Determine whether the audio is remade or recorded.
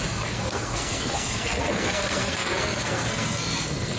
remade